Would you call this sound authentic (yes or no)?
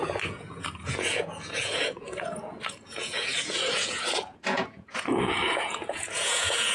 no